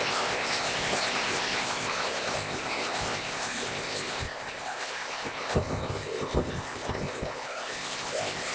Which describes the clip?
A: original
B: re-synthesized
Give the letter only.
B